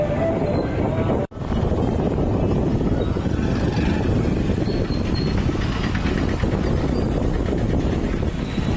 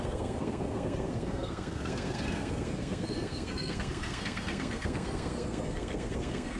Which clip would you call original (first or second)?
first